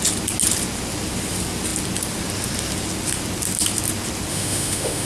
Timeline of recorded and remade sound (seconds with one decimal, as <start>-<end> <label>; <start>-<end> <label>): 0.0-4.3 recorded; 4.3-5.1 remade